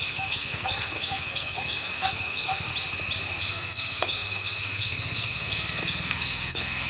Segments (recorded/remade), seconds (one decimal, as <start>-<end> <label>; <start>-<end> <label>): 0.0-2.7 remade; 2.7-3.4 recorded; 3.4-6.9 remade

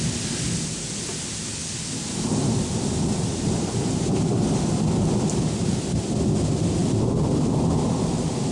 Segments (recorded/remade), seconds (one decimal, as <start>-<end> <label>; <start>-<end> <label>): 0.0-8.5 recorded

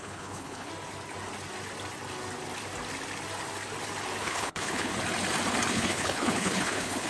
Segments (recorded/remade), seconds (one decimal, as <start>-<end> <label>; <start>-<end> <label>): 0.0-0.7 remade; 0.7-4.2 recorded; 4.2-4.9 remade; 4.9-5.7 recorded; 5.7-7.1 remade